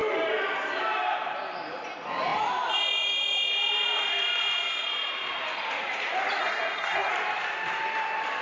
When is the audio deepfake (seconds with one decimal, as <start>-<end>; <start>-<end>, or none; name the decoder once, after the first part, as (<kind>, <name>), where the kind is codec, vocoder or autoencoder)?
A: 6.4-7.1 (codec, SNAC)